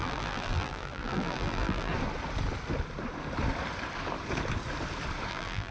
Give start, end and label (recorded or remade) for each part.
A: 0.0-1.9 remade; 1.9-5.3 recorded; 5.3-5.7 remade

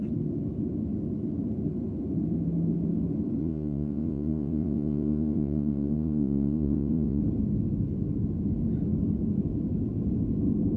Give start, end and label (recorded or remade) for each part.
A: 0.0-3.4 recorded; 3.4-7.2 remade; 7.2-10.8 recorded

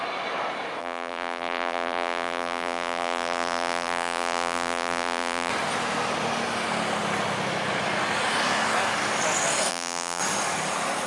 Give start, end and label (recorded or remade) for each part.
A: 0.0-0.8 recorded; 0.8-5.5 remade; 5.5-9.7 recorded; 9.7-10.2 remade; 10.2-11.1 recorded

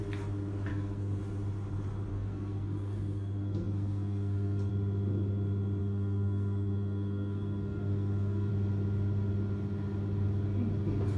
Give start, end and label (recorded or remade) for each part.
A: 0.0-0.7 recorded; 0.7-1.2 remade; 1.2-2.1 recorded; 2.1-4.7 remade; 4.7-5.8 recorded; 5.8-8.5 remade; 8.5-11.2 recorded

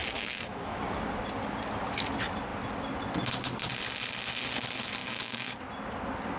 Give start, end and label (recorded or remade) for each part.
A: 0.0-0.8 remade; 0.8-5.0 recorded; 5.0-5.5 remade; 5.5-6.4 recorded